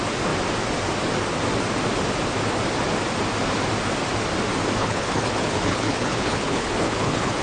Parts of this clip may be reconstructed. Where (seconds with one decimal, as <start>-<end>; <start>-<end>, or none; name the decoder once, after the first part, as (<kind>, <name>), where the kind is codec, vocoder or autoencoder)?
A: 4.8-7.4 (codec, HILCodec)